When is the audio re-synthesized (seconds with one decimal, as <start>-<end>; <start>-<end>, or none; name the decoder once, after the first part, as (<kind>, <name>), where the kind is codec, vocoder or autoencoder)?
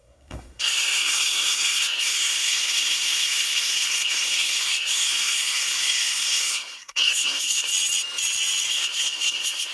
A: 0.0-7.7 (codec, SNAC); 8.7-9.7